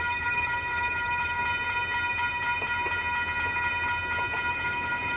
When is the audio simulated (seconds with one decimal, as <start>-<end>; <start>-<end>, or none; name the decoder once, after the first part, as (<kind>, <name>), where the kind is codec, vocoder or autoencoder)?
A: 0.0-1.4 (autoencoder, DAC-VAE); 4.5-5.2